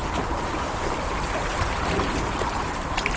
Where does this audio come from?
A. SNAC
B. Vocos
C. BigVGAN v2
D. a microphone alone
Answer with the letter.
C